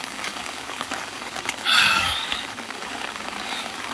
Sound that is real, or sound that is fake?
fake